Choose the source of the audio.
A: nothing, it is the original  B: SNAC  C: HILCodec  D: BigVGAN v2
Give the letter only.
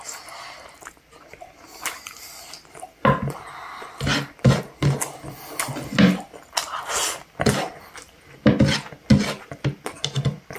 A